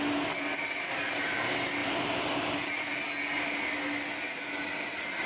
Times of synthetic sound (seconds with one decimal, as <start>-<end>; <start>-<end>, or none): none